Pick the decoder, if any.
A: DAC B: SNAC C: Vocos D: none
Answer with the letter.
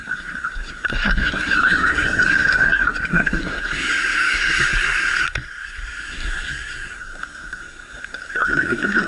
B